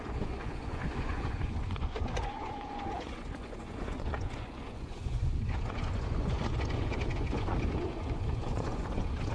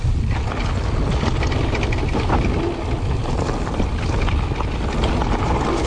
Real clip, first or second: second